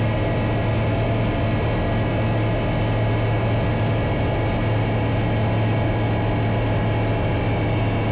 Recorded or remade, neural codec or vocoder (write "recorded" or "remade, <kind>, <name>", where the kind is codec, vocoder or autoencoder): recorded